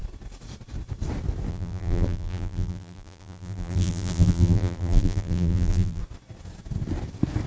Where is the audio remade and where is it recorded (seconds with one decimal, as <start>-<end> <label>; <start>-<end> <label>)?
0.0-1.5 recorded; 1.5-6.0 remade; 6.0-7.5 recorded